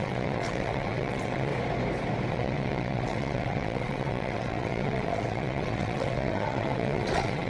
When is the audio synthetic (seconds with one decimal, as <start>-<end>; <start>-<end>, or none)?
0.0-1.5; 2.3-7.5